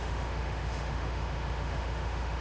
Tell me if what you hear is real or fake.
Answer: fake